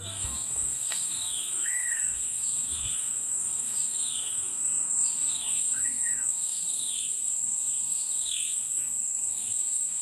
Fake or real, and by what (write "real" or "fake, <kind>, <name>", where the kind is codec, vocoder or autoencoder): fake, codec, DAC